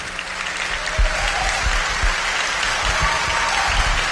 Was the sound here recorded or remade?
recorded